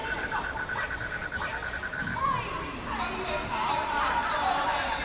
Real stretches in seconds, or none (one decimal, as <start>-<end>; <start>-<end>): 0.7-4.2